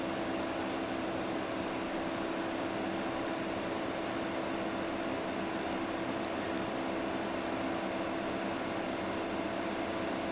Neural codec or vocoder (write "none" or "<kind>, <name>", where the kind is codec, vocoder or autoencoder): none